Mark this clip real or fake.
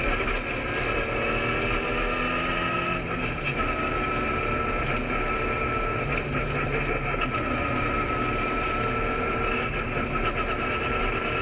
real